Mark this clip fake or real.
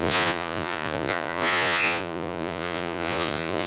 fake